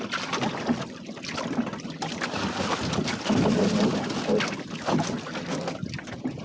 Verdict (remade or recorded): recorded